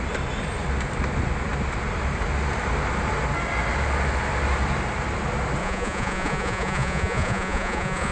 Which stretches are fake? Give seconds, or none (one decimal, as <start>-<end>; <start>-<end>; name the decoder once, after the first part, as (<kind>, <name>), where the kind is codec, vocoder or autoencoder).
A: 5.6-8.1 (vocoder, Vocos)